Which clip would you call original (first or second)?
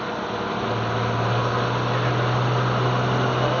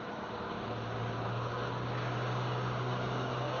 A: first